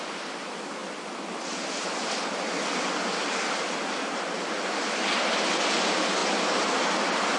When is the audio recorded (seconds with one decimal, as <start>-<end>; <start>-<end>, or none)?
0.0-7.4